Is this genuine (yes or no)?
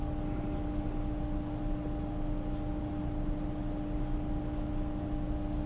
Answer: yes